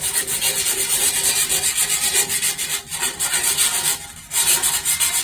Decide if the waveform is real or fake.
real